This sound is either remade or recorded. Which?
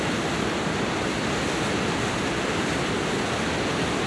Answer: recorded